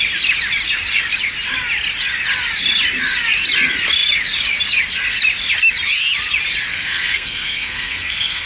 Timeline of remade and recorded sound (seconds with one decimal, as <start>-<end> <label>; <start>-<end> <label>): 0.0-6.7 recorded; 6.7-8.5 remade